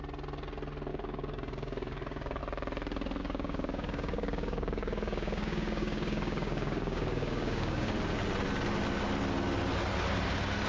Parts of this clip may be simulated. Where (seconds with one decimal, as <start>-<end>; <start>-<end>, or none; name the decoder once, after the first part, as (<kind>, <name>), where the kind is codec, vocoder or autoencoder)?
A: 0.9-2.4 (codec, DAC); 3.2-7.9